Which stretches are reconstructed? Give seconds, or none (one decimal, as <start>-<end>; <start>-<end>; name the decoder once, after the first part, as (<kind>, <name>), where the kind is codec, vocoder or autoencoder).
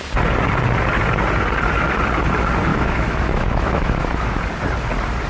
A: 2.7-4.4 (autoencoder, DAC-VAE)